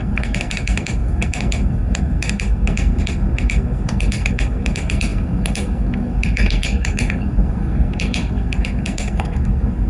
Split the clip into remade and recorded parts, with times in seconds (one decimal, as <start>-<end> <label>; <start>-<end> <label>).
0.0-9.9 remade